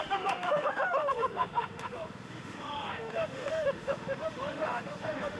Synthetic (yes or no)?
yes